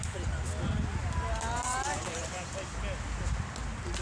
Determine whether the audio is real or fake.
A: real